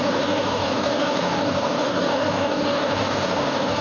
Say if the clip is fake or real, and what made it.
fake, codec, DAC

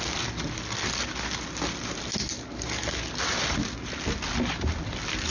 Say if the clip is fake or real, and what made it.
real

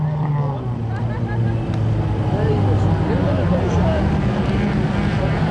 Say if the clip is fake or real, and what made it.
real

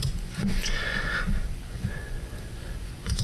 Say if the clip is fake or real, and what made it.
fake, vocoder, Vocos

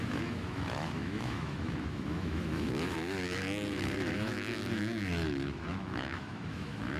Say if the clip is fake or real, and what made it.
fake, autoencoder, DAC-VAE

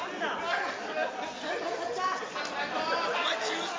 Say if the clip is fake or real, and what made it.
real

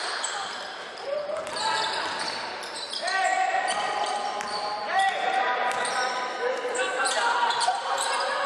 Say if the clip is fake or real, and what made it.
fake, vocoder, BigVGAN v2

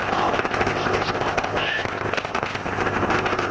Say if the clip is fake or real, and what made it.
fake, codec, ZipCodec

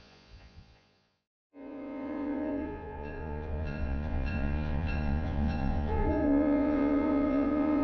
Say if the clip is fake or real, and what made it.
fake, vocoder, Vocos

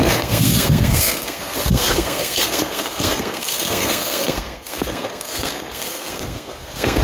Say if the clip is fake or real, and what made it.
fake, codec, SNAC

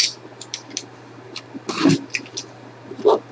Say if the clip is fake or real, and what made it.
real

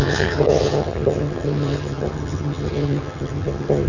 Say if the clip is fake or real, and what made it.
fake, vocoder, HiFi-GAN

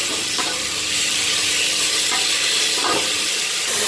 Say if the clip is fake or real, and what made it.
fake, vocoder, BigVGAN v2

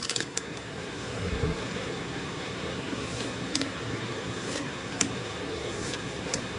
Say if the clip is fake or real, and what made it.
fake, codec, SNAC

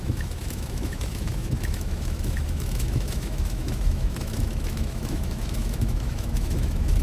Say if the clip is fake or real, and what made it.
fake, autoencoder, DAC-VAE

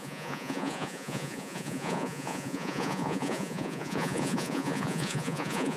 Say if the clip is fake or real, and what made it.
fake, vocoder, Vocos